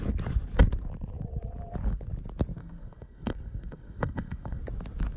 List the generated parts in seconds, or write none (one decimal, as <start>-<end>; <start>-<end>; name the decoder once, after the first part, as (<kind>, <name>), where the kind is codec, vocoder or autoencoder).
2.6-4.6 (codec, SNAC)